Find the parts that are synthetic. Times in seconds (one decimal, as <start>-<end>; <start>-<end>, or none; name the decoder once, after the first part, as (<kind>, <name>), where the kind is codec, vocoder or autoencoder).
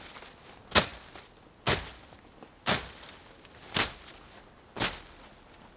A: none